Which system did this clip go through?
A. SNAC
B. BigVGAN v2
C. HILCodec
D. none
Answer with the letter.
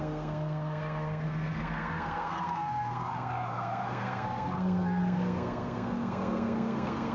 A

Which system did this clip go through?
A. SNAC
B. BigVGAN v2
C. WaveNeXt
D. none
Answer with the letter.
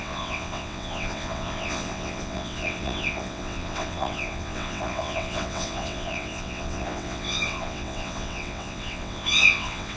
C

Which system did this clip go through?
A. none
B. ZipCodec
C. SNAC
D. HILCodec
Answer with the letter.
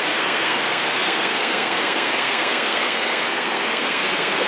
C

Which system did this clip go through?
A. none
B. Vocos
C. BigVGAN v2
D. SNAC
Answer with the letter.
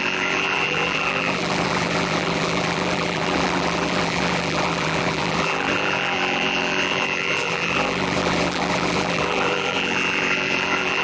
C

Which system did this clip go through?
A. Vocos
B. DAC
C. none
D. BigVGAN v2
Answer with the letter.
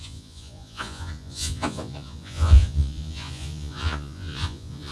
A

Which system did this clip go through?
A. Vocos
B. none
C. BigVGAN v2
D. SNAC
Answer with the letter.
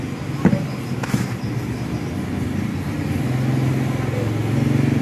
B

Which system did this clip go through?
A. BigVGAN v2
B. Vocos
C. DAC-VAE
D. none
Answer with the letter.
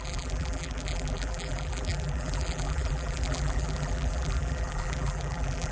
A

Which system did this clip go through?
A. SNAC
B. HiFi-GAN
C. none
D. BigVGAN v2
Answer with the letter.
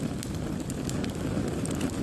C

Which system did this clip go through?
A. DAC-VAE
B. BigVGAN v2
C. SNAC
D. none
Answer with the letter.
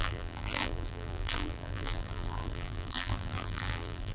B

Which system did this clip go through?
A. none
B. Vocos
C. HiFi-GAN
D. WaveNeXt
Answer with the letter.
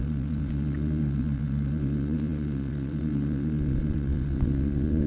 D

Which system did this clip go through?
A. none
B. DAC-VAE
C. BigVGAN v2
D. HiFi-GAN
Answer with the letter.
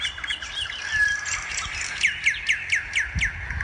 A